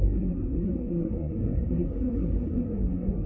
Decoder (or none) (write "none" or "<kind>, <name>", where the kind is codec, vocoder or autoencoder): codec, SNAC